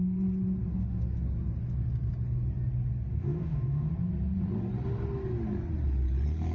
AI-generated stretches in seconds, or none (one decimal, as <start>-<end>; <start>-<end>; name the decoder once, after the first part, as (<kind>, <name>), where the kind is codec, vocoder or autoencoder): 0.7-1.2 (autoencoder, DAC-VAE); 3.1-3.9